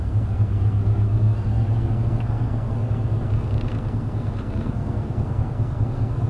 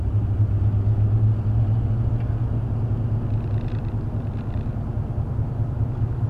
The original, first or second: second